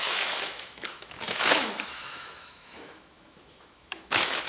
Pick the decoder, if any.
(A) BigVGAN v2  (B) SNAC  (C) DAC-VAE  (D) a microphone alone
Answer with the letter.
C